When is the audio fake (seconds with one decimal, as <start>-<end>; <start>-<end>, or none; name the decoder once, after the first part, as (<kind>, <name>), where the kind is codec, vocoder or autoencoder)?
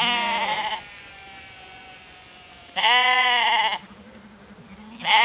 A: 0.5-3.6 (vocoder, Vocos)